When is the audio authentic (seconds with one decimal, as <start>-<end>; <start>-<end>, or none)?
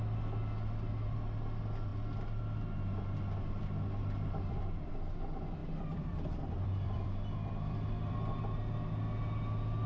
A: 0.0-4.0; 4.9-5.6; 8.3-9.9